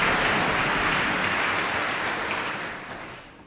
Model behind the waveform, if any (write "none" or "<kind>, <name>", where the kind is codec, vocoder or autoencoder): none